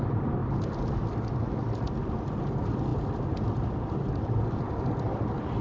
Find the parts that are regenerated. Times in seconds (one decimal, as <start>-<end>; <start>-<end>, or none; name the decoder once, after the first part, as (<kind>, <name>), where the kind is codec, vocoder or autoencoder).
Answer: none